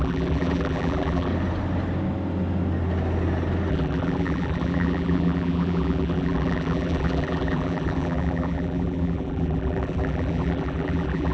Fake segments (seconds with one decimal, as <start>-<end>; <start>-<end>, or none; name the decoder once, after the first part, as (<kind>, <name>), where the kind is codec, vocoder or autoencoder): 0.0-1.3 (vocoder, BigVGAN v2); 3.7-11.3